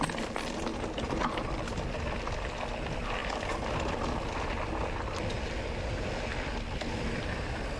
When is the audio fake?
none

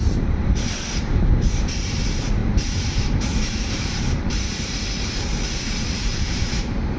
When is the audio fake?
0.0-7.0 (vocoder, BigVGAN v2)

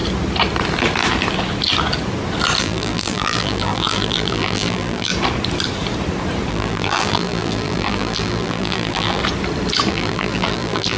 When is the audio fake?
2.6-5.1 (vocoder, BigVGAN v2); 6.5-9.2; 9.9-11.0

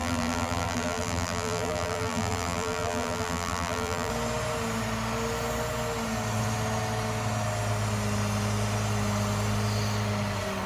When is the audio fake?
0.0-4.1 (vocoder, BigVGAN v2)

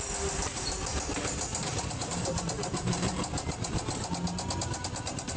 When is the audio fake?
1.5-4.1 (vocoder, BigVGAN v2)

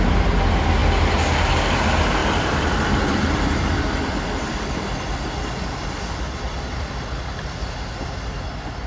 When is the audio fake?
2.2-6.9 (vocoder, BigVGAN v2)

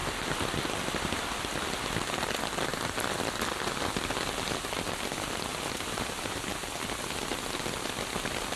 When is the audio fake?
5.5-6.4 (vocoder, BigVGAN v2)

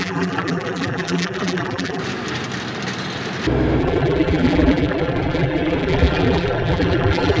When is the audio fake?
0.0-2.0 (vocoder, BigVGAN v2); 3.8-7.4